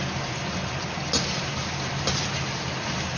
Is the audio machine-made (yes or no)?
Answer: no